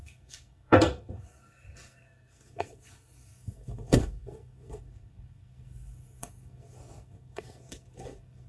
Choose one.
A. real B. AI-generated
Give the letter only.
B